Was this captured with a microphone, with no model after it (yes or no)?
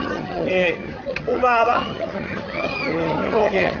no